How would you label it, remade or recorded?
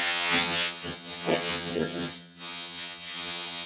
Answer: remade